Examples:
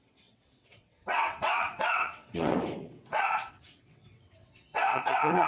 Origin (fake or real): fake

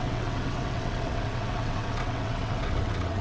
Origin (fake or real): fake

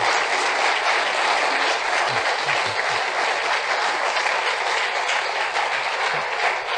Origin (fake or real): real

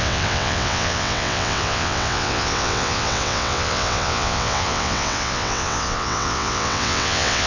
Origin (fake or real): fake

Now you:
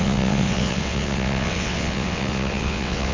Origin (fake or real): fake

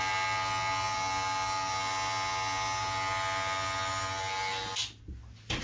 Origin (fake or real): real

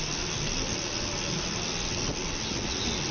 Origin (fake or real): real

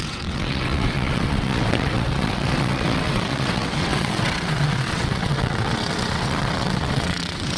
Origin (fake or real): fake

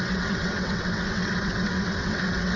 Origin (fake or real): fake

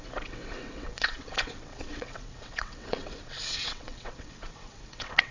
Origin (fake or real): fake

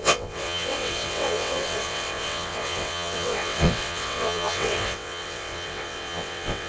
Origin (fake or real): fake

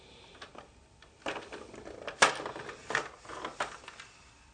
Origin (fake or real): real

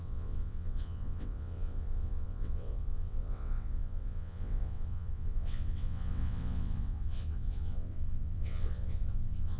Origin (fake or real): fake